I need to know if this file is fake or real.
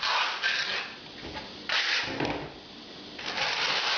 real